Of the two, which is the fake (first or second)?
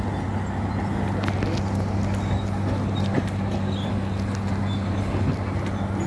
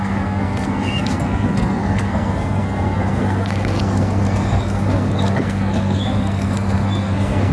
second